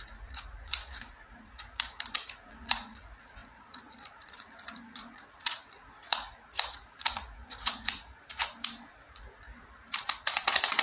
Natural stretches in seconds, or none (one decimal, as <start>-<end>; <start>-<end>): 8.4-9.0